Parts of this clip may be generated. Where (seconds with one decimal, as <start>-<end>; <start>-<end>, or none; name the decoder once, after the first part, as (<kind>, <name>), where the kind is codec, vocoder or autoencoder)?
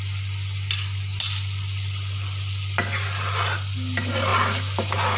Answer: none